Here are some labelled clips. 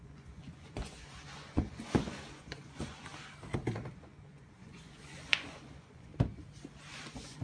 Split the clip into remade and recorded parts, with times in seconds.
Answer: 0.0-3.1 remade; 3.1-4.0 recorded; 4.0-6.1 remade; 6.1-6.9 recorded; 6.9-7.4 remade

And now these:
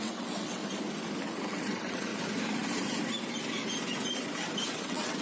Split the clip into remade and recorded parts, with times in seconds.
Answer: 0.0-0.6 remade; 0.6-1.5 recorded; 1.5-2.1 remade; 2.1-4.7 recorded; 4.7-5.2 remade

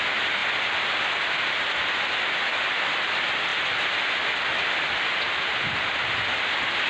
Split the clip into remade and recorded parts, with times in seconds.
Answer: 0.0-6.9 recorded

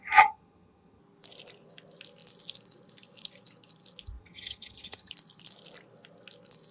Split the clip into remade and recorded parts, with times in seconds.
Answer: 0.0-1.0 remade; 1.0-4.2 recorded; 4.2-5.1 remade; 5.1-6.7 recorded